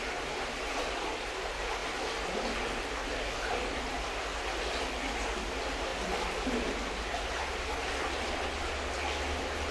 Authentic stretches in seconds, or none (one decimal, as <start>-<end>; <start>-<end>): 0.0-9.7